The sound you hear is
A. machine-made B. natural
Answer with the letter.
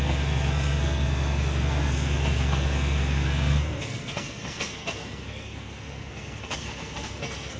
A